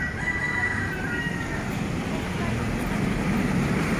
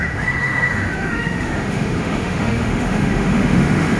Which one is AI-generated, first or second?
second